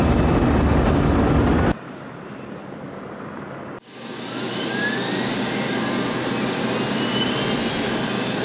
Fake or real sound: real